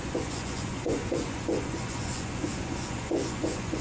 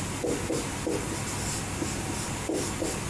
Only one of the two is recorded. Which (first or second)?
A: second